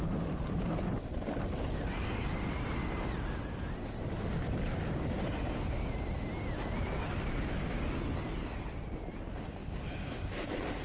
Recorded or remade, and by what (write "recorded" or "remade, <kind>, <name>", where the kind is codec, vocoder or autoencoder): recorded